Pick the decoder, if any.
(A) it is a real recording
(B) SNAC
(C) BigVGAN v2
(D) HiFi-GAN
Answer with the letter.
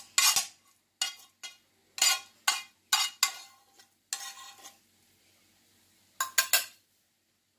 A